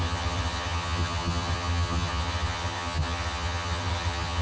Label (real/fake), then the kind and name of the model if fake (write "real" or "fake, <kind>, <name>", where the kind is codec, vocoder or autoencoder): fake, vocoder, HiFi-GAN